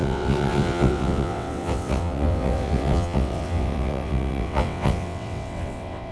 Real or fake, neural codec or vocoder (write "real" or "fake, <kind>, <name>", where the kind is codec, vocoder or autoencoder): fake, vocoder, WaveNeXt